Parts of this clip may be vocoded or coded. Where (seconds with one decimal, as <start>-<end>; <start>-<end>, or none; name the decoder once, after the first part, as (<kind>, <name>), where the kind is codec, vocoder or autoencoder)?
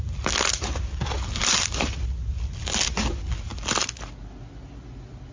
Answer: none